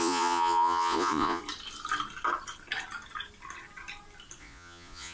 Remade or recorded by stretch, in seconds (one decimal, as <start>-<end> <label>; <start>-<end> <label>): 0.0-1.4 remade; 1.4-4.4 recorded; 4.4-5.1 remade